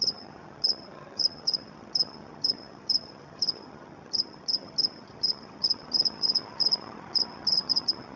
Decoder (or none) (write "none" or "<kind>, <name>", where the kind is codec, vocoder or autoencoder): vocoder, HiFi-GAN